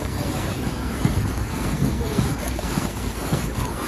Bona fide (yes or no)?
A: no